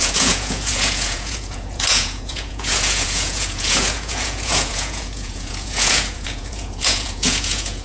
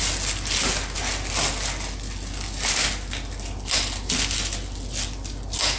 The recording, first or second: second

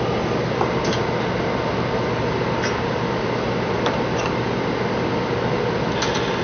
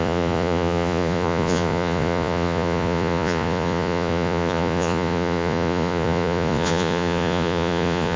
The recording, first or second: first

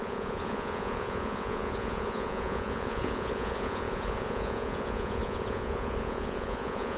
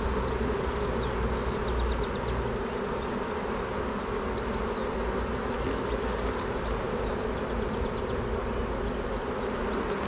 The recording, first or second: second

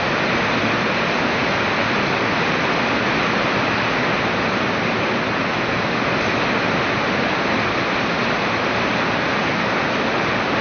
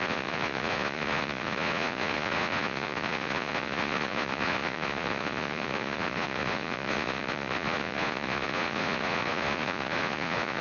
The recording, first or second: first